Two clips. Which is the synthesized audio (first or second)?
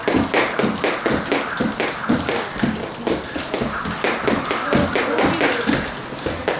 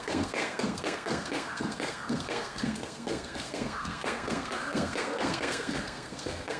second